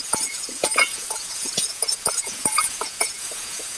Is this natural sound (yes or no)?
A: no